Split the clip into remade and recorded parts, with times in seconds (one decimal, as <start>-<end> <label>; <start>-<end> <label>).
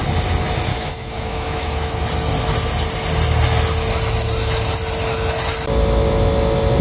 0.0-0.7 recorded; 0.7-2.0 remade; 2.0-6.8 recorded